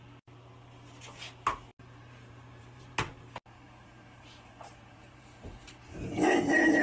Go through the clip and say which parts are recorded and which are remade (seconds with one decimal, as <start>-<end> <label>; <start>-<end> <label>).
0.0-1.7 recorded; 1.7-5.8 remade; 5.8-6.8 recorded

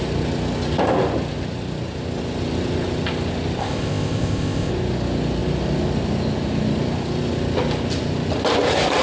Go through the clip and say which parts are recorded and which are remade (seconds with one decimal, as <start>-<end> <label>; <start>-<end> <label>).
0.0-3.6 recorded; 3.6-4.7 remade; 4.7-9.0 recorded